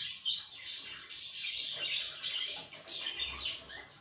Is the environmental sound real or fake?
real